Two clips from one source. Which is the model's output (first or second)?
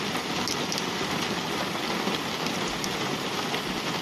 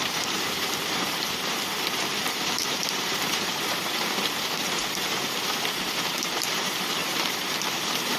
second